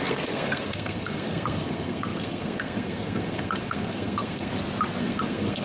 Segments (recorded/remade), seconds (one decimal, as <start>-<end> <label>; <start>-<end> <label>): 0.0-4.5 remade; 4.5-5.0 recorded; 5.0-5.6 remade